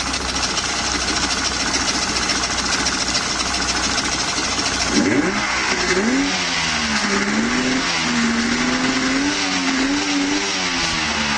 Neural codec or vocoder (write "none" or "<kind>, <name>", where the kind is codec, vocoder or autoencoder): none